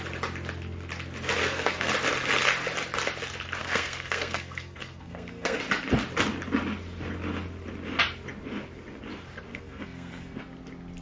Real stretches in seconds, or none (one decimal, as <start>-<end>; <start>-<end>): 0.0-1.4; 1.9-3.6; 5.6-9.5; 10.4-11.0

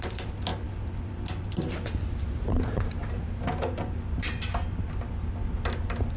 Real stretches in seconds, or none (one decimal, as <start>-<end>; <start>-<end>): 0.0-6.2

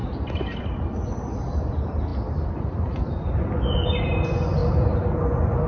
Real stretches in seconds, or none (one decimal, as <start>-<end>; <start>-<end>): 0.0-5.7

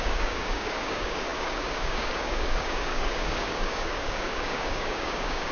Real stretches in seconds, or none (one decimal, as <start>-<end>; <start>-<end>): none

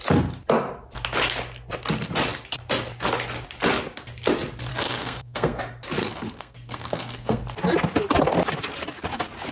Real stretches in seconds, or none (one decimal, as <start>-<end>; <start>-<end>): 0.0-4.7; 5.6-6.0; 7.4-9.5

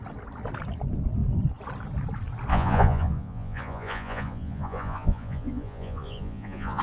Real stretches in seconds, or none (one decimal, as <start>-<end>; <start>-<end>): 0.0-2.5